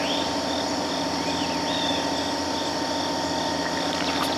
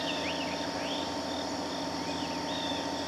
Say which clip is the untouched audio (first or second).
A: second